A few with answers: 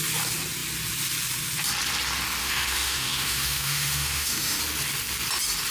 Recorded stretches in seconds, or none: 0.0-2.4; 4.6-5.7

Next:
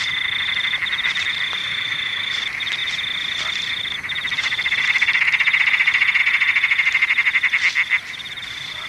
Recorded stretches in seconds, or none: 0.0-1.6; 2.4-8.9

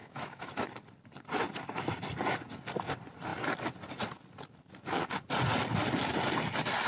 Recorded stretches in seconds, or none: 0.5-6.9

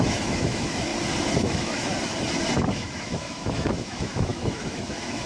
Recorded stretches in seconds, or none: 0.9-1.4; 1.9-2.7